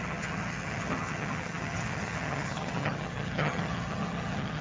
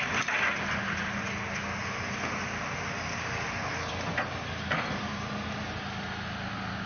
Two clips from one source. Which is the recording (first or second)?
second